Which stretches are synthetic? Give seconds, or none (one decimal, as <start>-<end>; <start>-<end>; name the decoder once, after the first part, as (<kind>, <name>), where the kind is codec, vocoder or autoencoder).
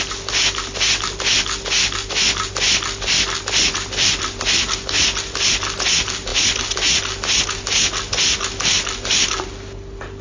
none